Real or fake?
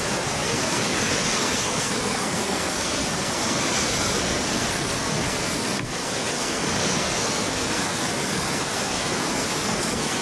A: fake